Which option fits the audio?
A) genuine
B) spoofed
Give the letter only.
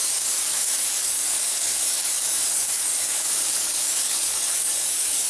B